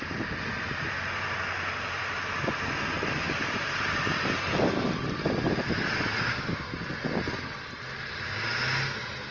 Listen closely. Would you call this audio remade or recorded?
recorded